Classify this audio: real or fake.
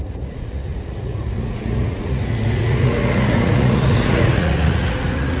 fake